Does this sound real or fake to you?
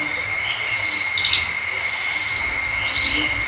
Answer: fake